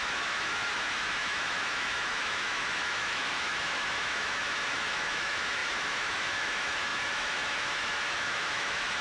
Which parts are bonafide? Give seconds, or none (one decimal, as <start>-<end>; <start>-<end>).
none